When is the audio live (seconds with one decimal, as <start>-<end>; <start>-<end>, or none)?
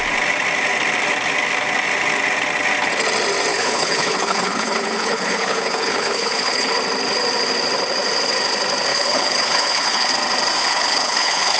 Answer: 0.0-3.5; 6.7-8.9; 10.1-10.6